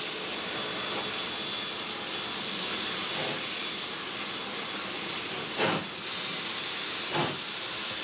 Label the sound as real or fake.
real